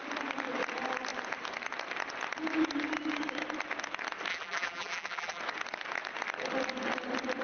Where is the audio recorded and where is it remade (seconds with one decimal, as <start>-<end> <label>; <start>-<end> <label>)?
0.0-4.3 recorded; 4.3-5.4 remade; 5.4-7.4 recorded